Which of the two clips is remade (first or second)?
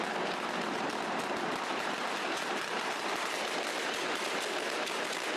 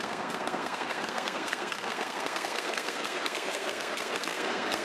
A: second